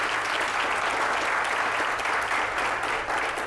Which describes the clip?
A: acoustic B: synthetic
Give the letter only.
A